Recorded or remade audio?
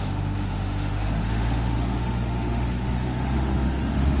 remade